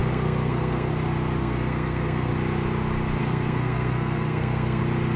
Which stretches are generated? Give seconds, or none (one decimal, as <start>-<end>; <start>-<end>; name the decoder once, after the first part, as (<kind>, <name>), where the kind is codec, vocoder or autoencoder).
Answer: 0.0-0.9 (codec, SNAC); 1.4-2.3; 3.2-4.8